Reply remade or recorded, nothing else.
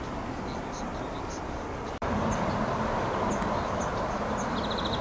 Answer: recorded